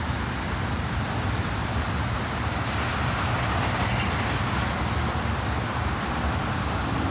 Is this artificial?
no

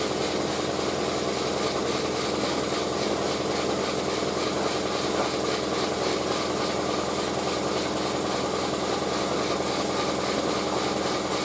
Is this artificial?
no